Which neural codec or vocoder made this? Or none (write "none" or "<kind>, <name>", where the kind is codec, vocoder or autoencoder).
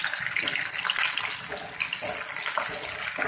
none